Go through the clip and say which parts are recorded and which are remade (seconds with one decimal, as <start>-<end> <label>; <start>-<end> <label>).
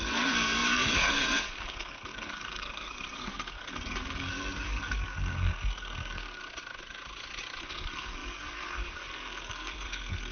0.0-6.4 remade; 6.4-7.6 recorded; 7.6-10.3 remade